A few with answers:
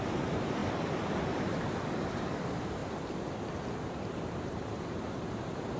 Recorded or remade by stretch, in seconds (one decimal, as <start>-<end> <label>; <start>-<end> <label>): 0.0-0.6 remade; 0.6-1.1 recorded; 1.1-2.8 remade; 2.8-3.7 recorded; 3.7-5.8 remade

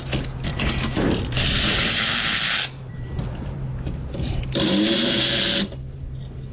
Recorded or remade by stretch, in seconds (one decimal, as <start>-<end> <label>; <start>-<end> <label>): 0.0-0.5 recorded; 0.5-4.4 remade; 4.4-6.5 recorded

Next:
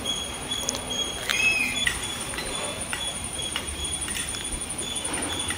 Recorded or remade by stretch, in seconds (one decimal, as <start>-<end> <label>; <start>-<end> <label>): 0.0-1.3 recorded; 1.3-4.5 remade; 4.5-5.6 recorded

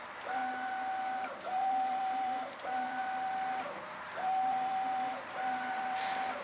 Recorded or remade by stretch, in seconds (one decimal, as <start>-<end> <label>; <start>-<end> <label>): 0.0-0.4 remade; 0.4-1.3 recorded; 1.3-3.0 remade; 3.0-3.9 recorded; 3.9-6.4 remade